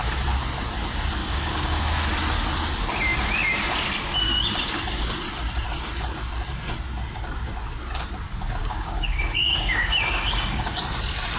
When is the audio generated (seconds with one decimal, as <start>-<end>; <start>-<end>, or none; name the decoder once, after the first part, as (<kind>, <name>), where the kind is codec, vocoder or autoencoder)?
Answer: 1.2-1.8 (codec, DAC); 8.6-10.8